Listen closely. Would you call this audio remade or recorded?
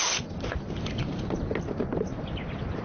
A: recorded